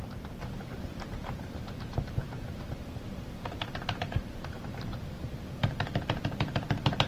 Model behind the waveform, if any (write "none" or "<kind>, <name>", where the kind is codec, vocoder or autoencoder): vocoder, BigVGAN v2